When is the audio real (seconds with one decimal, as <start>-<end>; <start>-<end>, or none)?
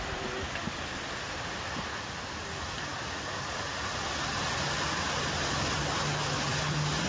0.0-7.1